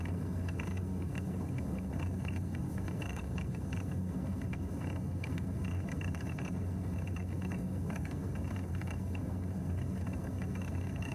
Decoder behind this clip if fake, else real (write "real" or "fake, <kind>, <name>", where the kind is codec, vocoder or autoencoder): fake, codec, SNAC